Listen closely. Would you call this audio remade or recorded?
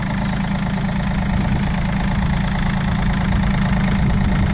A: recorded